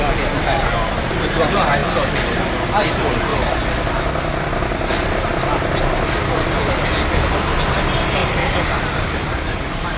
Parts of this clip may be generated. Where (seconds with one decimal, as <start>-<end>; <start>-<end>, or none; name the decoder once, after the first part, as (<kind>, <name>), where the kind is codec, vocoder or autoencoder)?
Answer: 8.2-10.0 (vocoder, BigVGAN v2)